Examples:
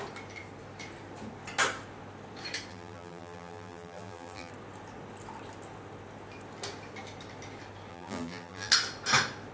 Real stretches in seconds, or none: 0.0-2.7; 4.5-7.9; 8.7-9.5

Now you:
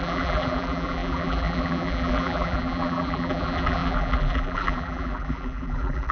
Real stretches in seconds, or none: none

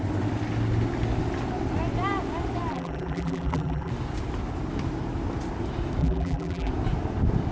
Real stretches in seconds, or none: 0.0-2.7; 3.9-6.0; 6.7-7.5

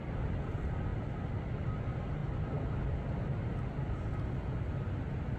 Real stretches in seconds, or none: 0.0-5.4

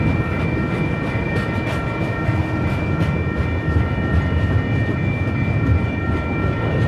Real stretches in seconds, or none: 0.0-6.9

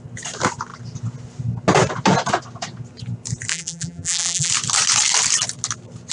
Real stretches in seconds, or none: 0.0-3.5; 4.5-6.1

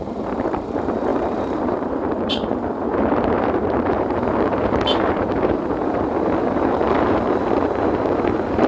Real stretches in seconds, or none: none